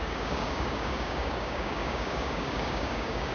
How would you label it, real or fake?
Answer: fake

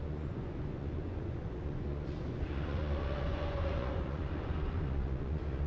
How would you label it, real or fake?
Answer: fake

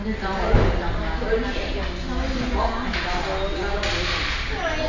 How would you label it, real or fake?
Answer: real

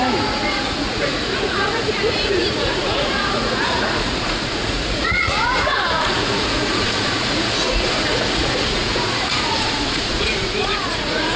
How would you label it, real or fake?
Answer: fake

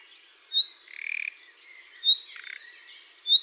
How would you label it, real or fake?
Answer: real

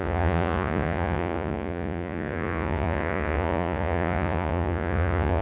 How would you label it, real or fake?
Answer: fake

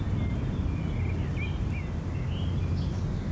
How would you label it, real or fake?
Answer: real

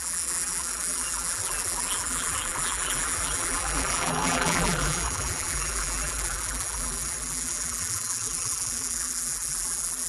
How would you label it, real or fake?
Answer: fake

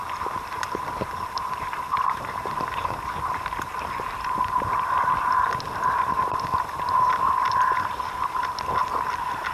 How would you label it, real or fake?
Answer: real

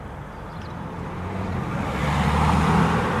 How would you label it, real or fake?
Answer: real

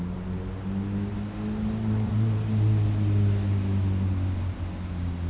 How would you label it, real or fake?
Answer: real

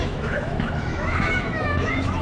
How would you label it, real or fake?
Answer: fake